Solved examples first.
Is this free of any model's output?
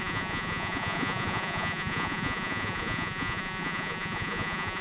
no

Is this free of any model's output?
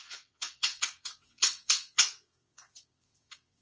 no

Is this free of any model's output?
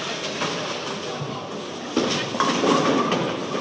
yes